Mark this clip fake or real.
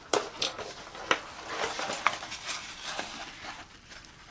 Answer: real